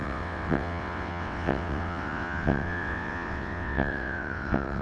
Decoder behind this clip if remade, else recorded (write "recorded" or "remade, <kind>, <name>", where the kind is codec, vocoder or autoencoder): remade, vocoder, WaveNeXt